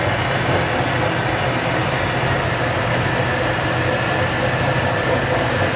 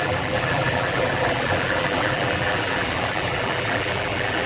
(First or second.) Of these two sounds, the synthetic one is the second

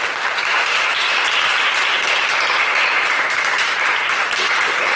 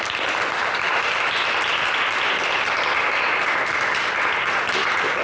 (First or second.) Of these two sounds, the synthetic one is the first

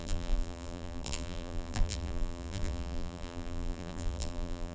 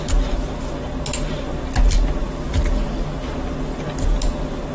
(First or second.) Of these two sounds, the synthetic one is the first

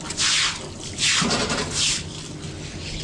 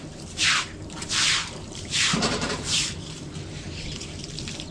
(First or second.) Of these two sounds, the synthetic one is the second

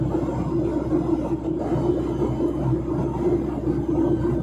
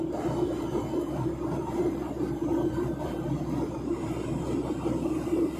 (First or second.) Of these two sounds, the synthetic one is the second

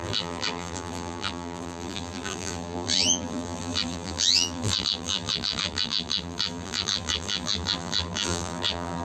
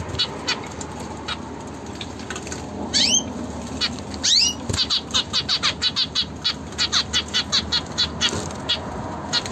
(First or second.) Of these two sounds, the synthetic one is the first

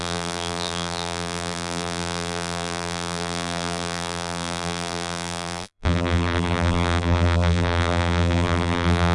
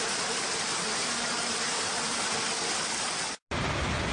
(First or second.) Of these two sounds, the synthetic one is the first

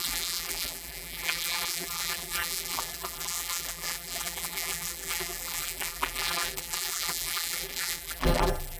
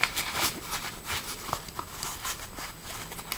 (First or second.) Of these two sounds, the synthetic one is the first